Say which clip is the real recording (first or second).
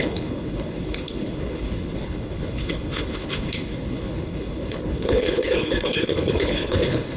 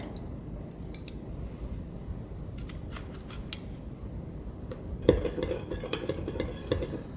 second